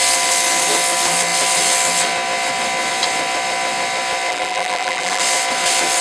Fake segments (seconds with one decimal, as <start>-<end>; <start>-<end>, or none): 4.3-5.2